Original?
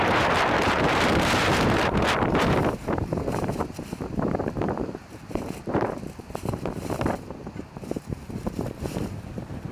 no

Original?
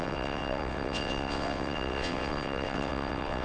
no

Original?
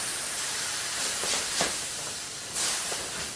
no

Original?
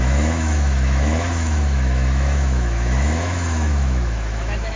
no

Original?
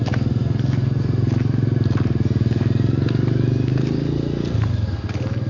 yes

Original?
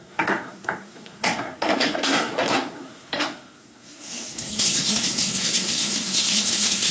no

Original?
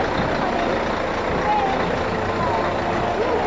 yes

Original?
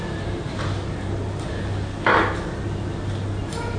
yes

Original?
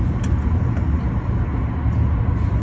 yes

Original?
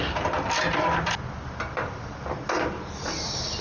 yes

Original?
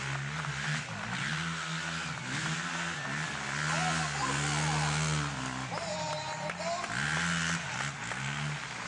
yes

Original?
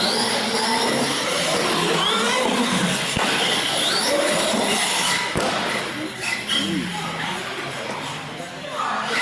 yes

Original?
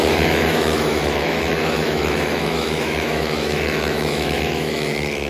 no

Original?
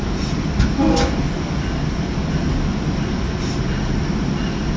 yes